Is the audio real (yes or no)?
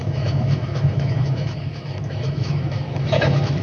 no